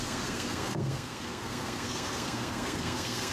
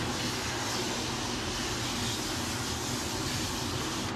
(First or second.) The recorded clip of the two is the second